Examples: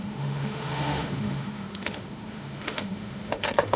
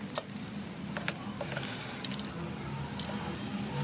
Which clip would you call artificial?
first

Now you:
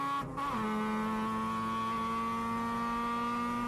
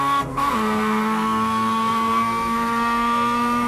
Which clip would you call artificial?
second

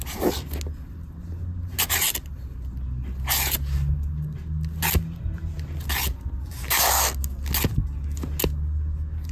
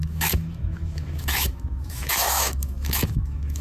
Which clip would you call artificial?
second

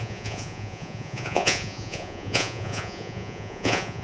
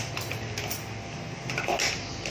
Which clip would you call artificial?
first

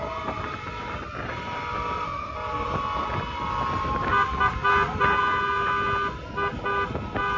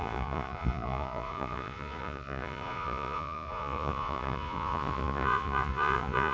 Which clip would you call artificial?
second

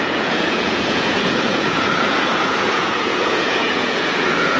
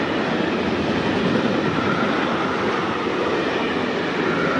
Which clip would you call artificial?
first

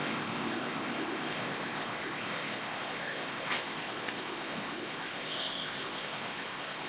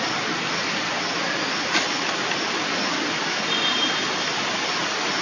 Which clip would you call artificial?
first